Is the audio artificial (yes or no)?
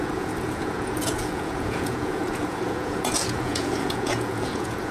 yes